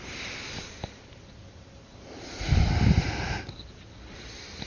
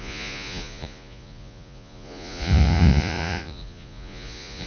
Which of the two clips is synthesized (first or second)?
second